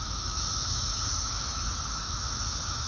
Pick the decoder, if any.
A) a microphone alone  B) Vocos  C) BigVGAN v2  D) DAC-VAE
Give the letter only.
D